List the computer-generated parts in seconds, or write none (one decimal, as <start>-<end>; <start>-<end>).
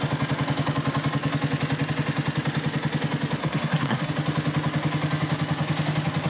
3.4-4.1